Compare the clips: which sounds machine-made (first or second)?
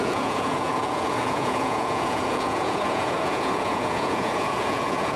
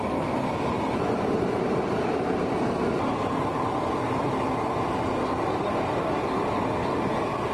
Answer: first